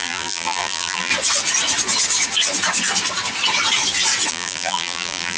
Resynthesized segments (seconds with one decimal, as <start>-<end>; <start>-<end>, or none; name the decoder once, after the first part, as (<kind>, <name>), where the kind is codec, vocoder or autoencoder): 0.0-1.1 (vocoder, BigVGAN v2); 4.3-5.4